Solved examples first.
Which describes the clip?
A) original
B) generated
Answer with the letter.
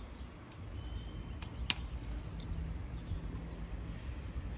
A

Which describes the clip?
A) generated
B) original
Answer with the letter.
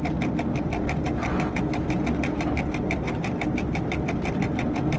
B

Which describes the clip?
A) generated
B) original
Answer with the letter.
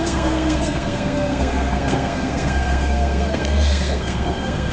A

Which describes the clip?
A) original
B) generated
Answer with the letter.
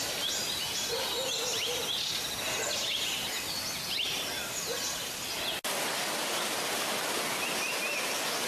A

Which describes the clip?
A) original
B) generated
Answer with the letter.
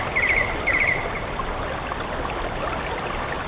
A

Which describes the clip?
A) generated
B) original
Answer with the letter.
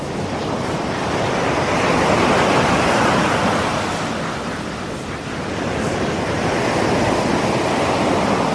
B